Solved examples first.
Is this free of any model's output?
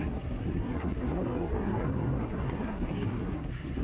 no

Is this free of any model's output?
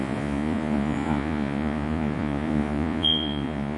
no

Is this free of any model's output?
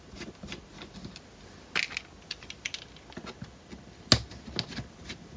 yes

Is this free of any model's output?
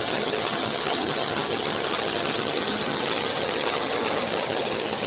no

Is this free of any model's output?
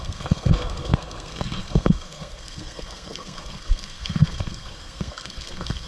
no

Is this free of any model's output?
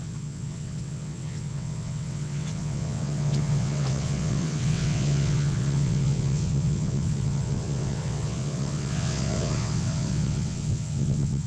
no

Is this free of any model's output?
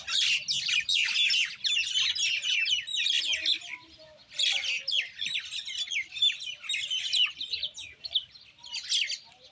yes